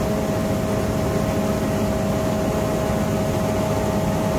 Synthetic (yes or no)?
no